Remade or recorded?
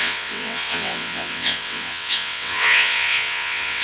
remade